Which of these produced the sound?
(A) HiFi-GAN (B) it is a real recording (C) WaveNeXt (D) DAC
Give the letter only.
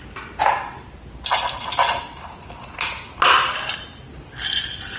B